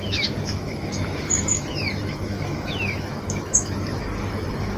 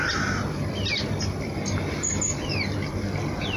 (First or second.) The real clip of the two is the second